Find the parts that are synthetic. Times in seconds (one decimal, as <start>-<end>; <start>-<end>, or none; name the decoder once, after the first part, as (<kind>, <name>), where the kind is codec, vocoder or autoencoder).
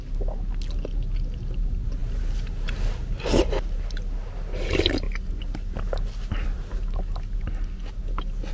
none